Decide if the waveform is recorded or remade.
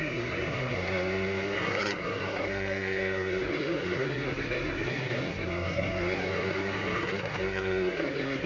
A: remade